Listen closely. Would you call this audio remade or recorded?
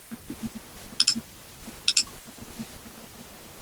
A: recorded